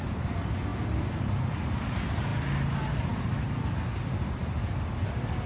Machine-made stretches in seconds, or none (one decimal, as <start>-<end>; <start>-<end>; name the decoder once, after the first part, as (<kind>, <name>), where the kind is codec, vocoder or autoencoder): none